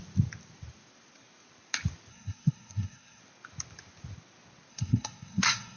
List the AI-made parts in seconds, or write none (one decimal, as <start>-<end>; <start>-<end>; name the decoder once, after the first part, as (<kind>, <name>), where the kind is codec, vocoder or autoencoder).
2.1-3.2 (codec, SNAC); 4.7-5.8